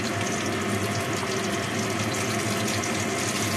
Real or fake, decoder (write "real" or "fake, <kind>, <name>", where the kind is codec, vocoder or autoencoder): real